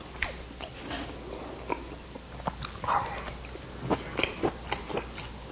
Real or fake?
real